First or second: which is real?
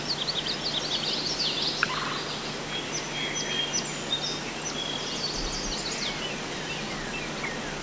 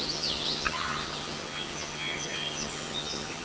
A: first